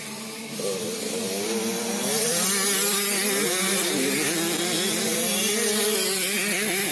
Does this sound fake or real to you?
real